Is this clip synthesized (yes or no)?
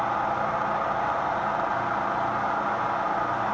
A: no